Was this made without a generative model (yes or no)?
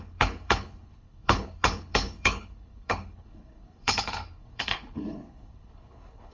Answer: no